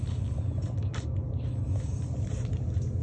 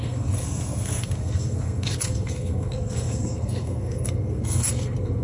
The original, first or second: first